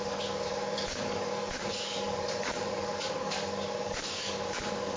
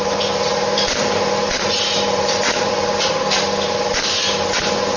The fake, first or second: first